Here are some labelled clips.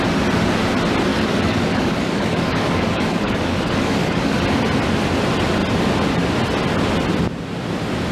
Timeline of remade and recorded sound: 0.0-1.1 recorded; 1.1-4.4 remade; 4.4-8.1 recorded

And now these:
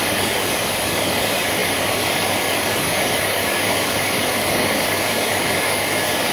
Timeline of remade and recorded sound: 0.0-6.3 remade

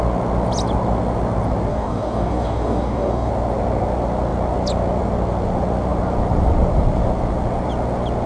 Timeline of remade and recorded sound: 0.0-1.7 recorded; 1.7-3.3 remade; 3.3-8.3 recorded

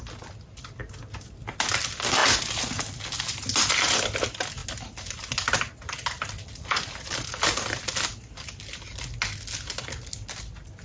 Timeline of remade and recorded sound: 0.0-10.8 recorded

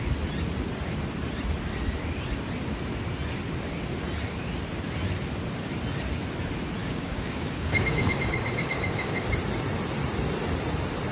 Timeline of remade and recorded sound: 0.0-6.8 recorded; 6.8-9.3 remade; 9.3-11.1 recorded

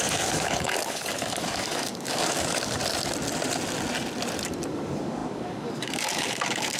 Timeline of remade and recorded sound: 0.0-2.8 remade; 2.8-4.7 recorded; 4.7-6.8 remade